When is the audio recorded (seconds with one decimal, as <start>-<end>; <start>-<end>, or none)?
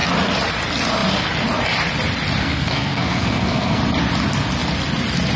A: 0.0-2.4; 3.8-5.4